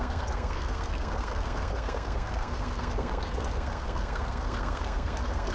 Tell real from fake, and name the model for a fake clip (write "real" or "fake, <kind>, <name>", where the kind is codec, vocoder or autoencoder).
fake, codec, SNAC